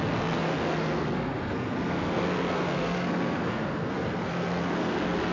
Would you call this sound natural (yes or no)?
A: no